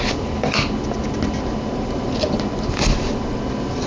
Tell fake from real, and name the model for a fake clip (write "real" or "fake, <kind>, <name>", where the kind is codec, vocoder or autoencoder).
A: real